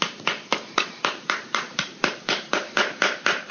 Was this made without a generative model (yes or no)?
no